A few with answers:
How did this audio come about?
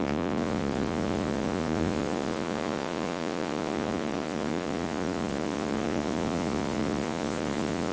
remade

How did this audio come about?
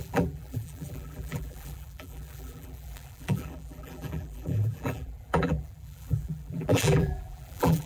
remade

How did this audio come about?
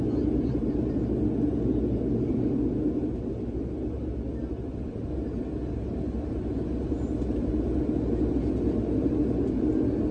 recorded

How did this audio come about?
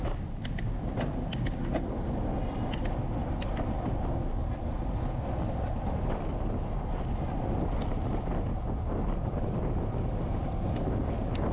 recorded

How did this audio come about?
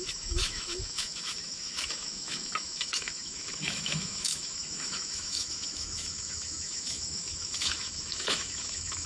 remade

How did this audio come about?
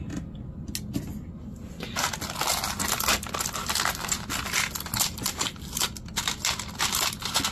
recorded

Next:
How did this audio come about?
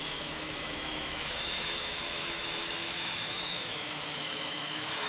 remade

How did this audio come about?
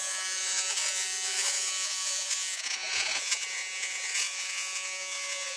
remade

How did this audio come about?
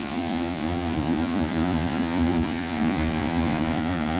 remade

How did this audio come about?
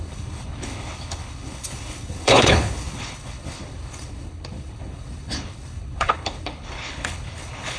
remade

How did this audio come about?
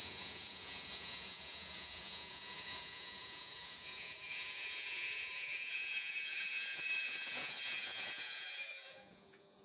remade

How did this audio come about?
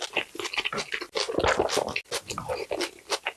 recorded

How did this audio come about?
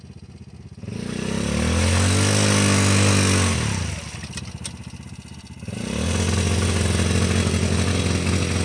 recorded